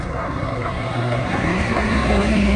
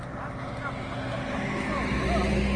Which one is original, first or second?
second